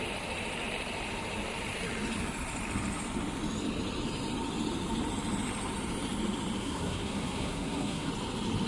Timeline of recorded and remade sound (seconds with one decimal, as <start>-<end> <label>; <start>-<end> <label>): 0.0-6.6 recorded; 6.6-8.1 remade; 8.1-8.7 recorded